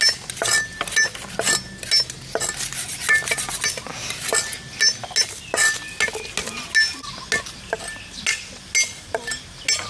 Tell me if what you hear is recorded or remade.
recorded